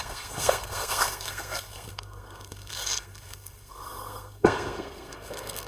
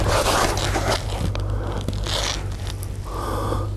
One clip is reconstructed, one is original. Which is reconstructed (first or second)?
first